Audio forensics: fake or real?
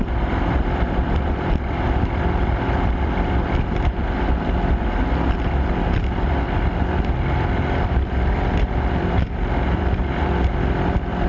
fake